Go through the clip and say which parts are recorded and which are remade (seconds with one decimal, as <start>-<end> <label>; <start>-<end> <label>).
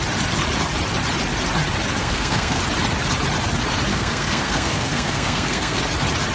0.0-2.0 recorded; 2.0-2.6 remade; 2.6-3.9 recorded; 3.9-5.8 remade; 5.8-6.3 recorded